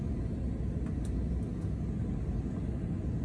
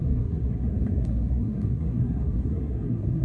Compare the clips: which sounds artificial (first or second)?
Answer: second